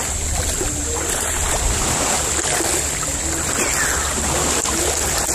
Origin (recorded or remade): recorded